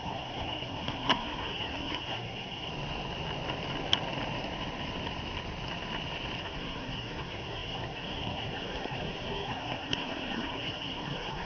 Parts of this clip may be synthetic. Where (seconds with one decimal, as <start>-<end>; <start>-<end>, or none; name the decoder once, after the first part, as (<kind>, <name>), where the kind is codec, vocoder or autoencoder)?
0.0-2.7 (codec, SNAC); 6.4-11.5